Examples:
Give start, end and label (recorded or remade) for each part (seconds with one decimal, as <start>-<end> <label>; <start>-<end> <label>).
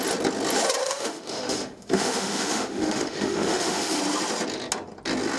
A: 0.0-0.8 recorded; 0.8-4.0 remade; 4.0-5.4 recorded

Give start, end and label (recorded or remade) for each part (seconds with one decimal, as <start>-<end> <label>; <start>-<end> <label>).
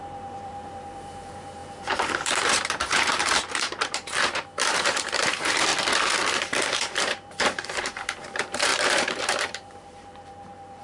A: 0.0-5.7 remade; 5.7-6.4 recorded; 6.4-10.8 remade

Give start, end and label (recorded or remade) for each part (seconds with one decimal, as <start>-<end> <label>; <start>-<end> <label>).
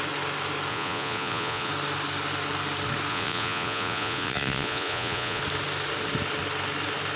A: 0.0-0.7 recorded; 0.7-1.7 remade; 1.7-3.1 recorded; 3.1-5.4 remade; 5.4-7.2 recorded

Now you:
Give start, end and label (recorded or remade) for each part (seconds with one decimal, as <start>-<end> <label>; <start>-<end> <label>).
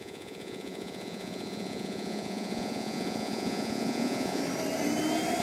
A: 0.0-4.4 remade; 4.4-5.4 recorded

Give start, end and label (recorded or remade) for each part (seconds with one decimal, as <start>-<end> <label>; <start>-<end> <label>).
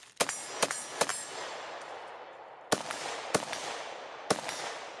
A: 0.0-5.0 recorded